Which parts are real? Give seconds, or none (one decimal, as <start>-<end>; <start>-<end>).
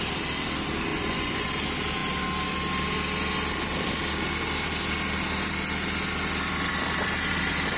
0.0-0.9; 1.5-7.8